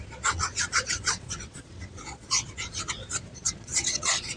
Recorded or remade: remade